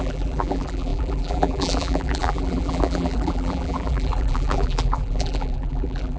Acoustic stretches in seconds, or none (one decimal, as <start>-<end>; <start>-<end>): none